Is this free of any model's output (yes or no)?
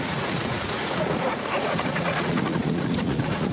no